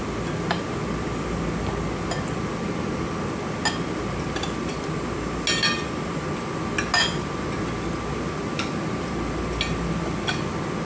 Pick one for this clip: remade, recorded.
recorded